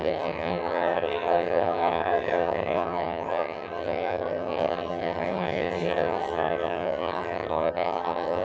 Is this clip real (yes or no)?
no